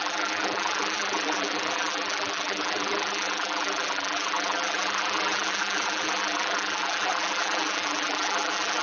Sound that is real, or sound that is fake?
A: fake